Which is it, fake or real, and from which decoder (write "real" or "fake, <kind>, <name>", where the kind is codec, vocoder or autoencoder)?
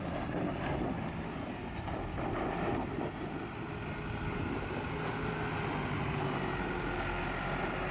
real